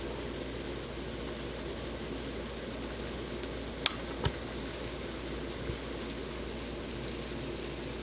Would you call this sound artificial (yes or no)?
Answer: no